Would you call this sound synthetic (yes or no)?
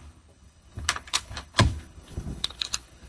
yes